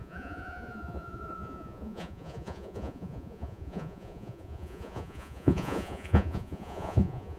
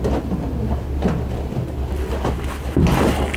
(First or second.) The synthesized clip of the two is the first